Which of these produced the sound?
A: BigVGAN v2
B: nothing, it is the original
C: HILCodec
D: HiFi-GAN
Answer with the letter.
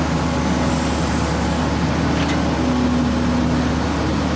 B